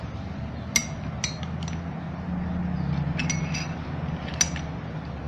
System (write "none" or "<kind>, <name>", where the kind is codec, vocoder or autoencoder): none